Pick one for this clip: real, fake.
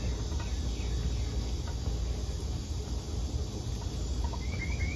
real